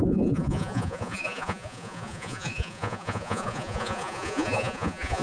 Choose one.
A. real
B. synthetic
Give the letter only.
B